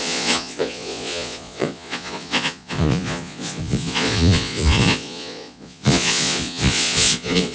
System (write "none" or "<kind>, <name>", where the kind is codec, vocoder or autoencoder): vocoder, Vocos